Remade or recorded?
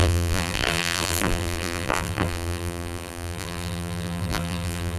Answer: remade